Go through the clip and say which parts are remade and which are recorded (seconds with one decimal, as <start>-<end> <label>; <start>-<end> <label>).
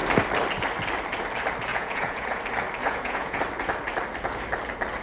0.0-1.7 recorded; 1.7-2.4 remade; 2.4-2.8 recorded; 2.8-3.4 remade; 3.4-5.0 recorded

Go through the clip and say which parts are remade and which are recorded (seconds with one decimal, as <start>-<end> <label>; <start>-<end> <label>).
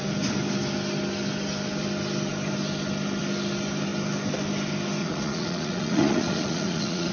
0.0-5.0 recorded; 5.0-7.1 remade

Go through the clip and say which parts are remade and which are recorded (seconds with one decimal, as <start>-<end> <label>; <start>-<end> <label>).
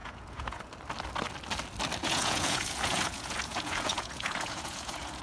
0.0-0.6 remade; 0.6-2.0 recorded; 2.0-5.2 remade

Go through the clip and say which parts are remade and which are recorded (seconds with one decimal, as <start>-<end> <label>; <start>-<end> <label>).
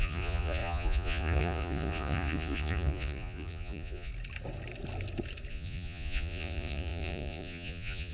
0.0-4.1 remade; 4.1-5.5 recorded; 5.5-8.1 remade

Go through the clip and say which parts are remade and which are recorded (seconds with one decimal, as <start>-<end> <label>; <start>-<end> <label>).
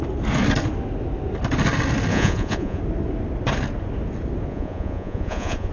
0.0-2.1 recorded; 2.1-2.8 remade; 2.8-4.5 recorded; 4.5-5.7 remade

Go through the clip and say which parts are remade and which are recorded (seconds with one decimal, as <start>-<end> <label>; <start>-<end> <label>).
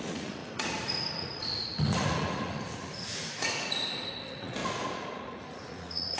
0.0-6.2 remade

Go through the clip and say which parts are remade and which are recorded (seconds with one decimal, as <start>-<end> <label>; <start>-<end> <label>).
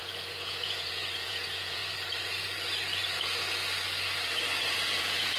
0.0-1.8 remade; 1.8-5.0 recorded; 5.0-5.4 remade